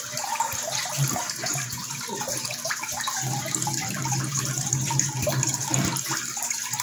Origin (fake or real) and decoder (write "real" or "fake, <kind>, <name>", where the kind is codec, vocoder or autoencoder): real